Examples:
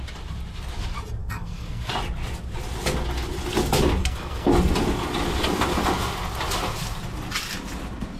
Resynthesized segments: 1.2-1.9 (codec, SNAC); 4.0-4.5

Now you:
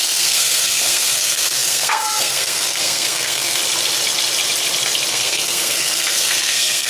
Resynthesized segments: 0.0-3.6 (codec, SNAC); 5.1-6.9

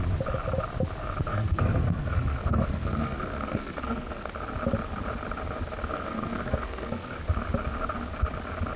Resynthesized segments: 1.3-4.3 (codec, SNAC); 5.9-7.2